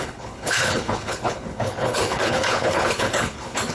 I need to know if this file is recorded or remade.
remade